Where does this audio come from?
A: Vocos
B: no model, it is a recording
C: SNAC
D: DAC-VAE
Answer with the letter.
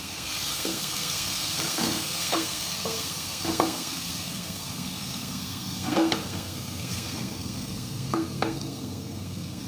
C